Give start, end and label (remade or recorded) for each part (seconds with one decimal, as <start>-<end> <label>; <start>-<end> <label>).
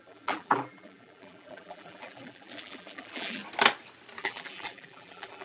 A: 0.0-3.4 remade; 3.4-4.2 recorded; 4.2-5.4 remade